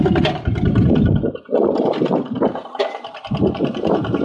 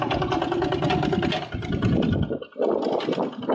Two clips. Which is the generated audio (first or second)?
first